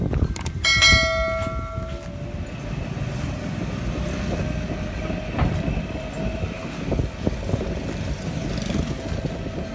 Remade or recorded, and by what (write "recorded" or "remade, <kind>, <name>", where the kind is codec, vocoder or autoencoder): recorded